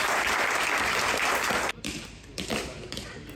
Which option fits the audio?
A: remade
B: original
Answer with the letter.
A